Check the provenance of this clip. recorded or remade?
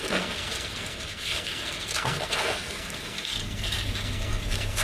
remade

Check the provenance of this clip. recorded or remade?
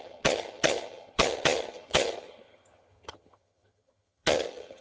remade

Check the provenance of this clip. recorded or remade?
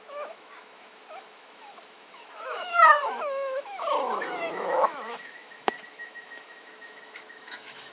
remade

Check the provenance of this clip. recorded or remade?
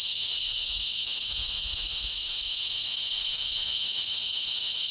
remade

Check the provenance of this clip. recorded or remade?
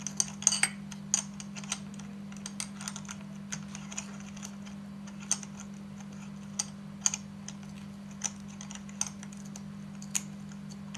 recorded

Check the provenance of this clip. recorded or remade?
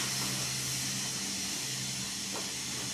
recorded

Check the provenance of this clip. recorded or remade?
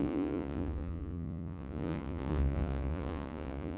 remade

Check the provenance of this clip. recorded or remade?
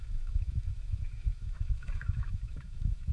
remade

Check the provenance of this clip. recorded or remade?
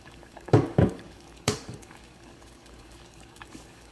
remade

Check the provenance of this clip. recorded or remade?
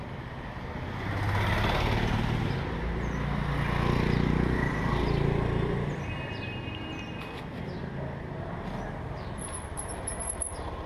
recorded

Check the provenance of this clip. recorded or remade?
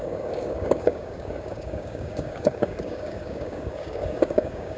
remade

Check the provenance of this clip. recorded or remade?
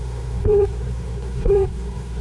remade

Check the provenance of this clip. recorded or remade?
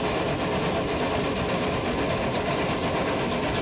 recorded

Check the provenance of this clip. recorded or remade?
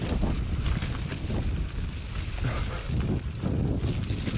recorded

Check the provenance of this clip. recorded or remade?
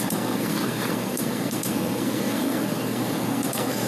remade